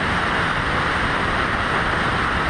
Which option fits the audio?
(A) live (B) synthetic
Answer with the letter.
A